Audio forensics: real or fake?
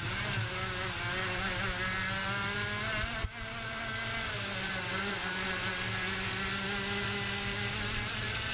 real